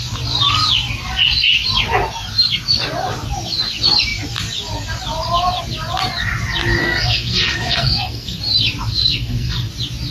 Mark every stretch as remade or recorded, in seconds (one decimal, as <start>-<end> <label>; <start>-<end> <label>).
0.0-6.8 recorded; 6.8-8.4 remade; 8.4-8.9 recorded; 8.9-9.7 remade; 9.7-10.1 recorded